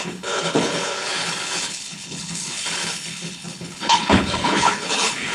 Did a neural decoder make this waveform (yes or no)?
yes